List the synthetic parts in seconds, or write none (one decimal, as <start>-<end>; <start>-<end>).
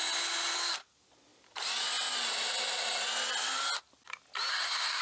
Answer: 4.5-5.0